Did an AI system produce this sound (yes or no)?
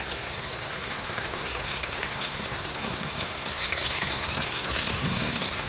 yes